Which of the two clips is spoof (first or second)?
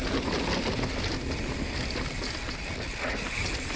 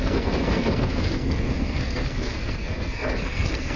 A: second